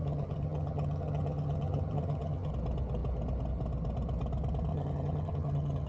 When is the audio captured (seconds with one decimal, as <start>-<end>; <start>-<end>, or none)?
2.5-4.7